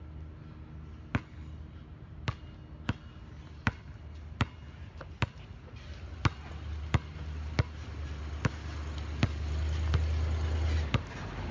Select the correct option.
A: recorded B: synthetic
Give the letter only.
A